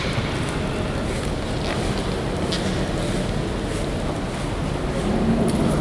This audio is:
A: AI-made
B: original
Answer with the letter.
B